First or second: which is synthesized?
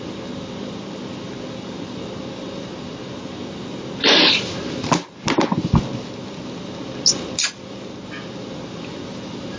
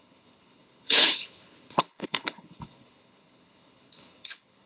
second